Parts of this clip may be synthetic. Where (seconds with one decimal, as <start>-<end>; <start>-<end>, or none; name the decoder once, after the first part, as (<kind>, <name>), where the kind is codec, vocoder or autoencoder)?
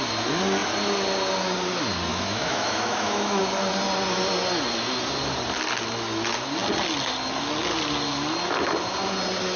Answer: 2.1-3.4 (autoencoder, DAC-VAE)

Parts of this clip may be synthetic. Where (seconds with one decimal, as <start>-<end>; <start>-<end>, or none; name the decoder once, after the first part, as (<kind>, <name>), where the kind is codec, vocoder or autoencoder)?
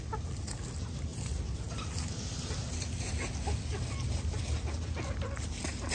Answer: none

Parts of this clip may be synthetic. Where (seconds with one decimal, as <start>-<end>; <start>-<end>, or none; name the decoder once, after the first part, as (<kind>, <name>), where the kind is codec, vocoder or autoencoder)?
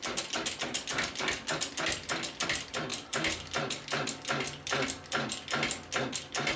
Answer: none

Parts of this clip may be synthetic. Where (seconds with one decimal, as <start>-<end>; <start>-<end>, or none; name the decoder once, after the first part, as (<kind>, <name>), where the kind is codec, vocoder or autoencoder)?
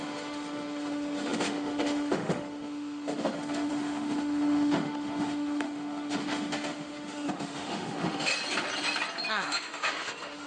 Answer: 0.0-8.3 (autoencoder, DAC-VAE); 9.3-10.5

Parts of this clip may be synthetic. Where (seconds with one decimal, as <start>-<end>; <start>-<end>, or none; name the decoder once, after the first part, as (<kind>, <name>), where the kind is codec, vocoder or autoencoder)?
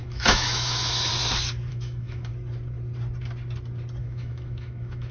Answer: 0.0-1.1 (autoencoder, DAC-VAE); 1.7-2.3; 4.0-5.1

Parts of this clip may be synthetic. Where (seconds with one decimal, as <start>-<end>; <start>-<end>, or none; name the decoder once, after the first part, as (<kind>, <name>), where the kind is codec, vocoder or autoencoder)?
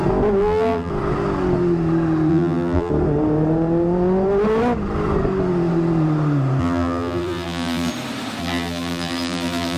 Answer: 0.4-0.9 (vocoder, BigVGAN v2); 2.3-2.9; 6.6-7.9; 8.4-9.8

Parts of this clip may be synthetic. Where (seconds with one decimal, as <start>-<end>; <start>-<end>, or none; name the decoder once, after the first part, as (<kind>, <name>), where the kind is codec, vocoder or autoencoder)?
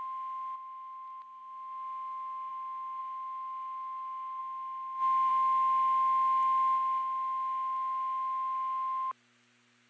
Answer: none